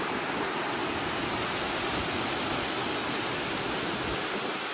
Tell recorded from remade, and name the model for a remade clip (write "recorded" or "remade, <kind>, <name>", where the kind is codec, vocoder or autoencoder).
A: recorded